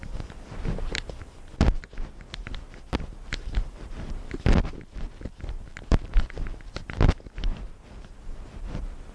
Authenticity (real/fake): real